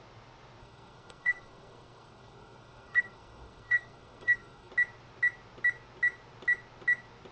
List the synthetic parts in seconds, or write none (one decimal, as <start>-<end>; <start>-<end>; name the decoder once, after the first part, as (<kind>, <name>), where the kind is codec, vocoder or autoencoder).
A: 0.6-4.7 (codec, SNAC)

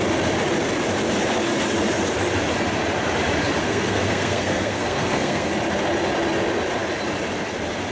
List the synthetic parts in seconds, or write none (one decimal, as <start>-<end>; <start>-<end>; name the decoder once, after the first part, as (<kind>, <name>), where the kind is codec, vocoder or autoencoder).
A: 3.6-5.5 (codec, SNAC)

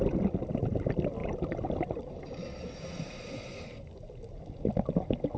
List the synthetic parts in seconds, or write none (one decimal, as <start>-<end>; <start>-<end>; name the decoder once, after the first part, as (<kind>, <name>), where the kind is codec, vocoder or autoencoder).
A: none

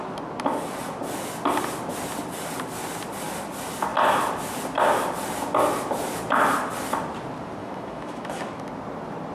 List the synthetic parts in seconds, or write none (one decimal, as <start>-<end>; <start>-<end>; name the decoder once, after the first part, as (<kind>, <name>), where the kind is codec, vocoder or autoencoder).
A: 7.6-8.6 (autoencoder, DAC-VAE)

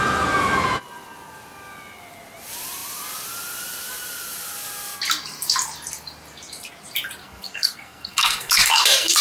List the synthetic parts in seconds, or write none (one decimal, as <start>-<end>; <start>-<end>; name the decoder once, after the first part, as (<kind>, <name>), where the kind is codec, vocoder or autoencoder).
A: 7.2-9.2 (codec, SNAC)

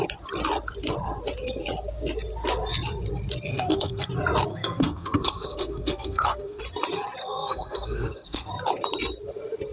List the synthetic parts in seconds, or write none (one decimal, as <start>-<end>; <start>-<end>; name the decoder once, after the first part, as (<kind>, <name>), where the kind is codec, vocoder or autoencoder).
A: 3.5-4.1 (codec, SNAC); 4.5-6.6; 7.2-8.5

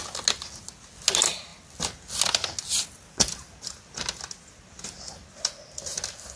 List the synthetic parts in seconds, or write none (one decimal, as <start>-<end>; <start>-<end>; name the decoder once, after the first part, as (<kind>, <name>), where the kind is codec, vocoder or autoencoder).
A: none